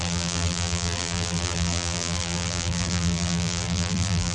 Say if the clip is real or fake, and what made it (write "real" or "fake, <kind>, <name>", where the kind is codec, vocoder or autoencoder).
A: fake, vocoder, BigVGAN v2